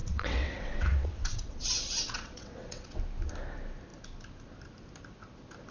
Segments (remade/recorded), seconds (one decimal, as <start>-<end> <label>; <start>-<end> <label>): 0.0-3.0 remade; 3.0-5.7 recorded